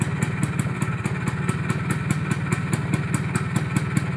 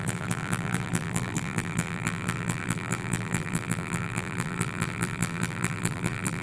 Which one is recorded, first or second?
first